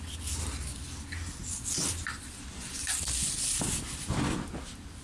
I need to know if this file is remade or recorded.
recorded